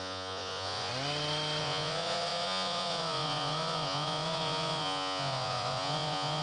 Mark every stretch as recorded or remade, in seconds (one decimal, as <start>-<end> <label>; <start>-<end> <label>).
0.0-0.9 remade; 0.9-1.6 recorded; 1.6-6.4 remade

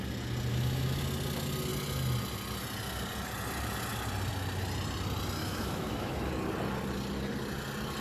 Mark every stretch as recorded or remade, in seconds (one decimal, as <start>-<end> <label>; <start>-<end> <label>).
0.0-0.5 recorded; 0.5-1.0 remade; 1.0-5.4 recorded; 5.4-6.3 remade; 6.3-8.0 recorded

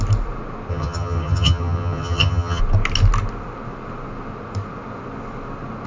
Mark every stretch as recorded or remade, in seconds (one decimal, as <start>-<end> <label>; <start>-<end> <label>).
0.0-0.7 recorded; 0.7-2.6 remade; 2.6-5.9 recorded

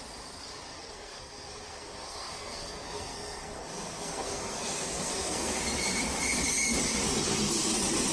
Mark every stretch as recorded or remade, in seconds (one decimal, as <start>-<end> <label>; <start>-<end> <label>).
0.0-0.7 recorded; 0.7-5.6 remade; 5.6-8.1 recorded

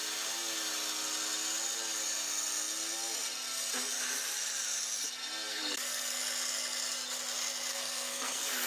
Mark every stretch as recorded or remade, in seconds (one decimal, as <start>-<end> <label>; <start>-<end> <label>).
0.0-5.5 recorded; 5.5-6.2 remade; 6.2-7.7 recorded; 7.7-8.7 remade